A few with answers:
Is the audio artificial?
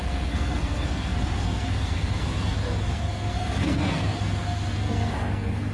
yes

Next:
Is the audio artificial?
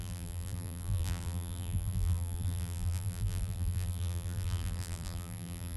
yes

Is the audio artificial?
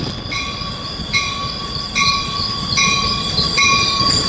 yes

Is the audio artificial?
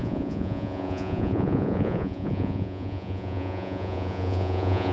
yes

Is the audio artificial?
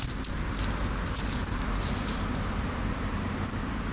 no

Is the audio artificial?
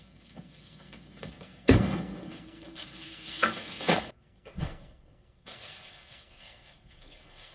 yes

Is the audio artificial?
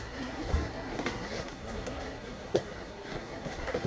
yes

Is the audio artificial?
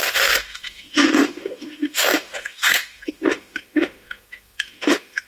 yes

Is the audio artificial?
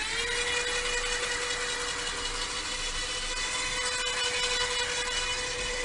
no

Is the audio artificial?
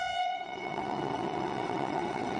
yes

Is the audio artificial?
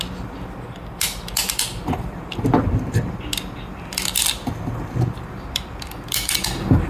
no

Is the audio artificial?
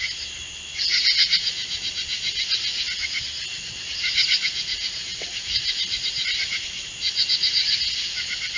no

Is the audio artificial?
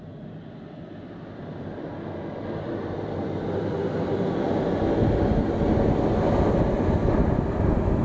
no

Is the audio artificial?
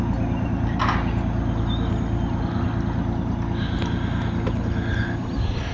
no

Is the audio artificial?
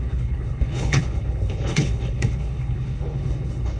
yes